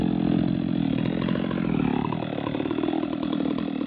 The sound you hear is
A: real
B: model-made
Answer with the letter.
A